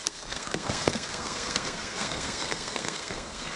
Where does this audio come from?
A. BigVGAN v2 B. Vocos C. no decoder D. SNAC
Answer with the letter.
D